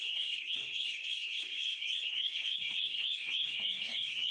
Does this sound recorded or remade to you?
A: remade